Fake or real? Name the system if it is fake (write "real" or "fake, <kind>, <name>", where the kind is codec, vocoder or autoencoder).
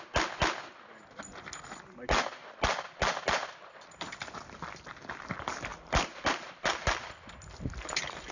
real